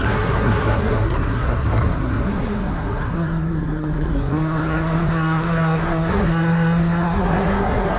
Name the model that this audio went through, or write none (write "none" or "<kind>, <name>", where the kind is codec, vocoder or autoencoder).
codec, SNAC